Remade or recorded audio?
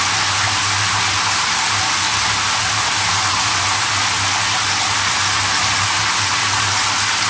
recorded